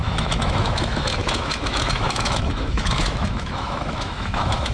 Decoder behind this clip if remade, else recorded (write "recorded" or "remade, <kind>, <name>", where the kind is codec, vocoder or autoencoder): remade, autoencoder, DAC-VAE